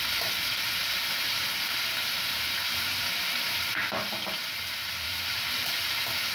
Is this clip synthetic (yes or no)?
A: yes